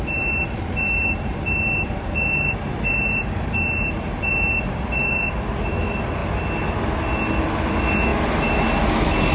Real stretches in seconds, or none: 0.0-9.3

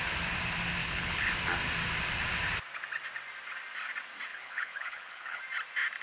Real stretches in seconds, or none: 0.0-0.8; 1.3-4.3; 5.4-6.0

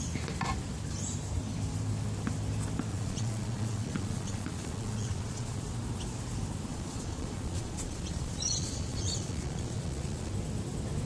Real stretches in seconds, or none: 0.0-2.9; 5.7-6.7; 10.3-11.1

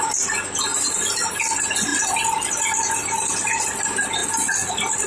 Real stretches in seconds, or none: 0.0-5.1